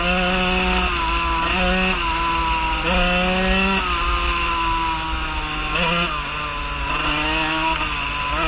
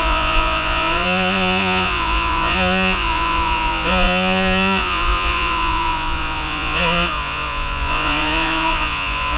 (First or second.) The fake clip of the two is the second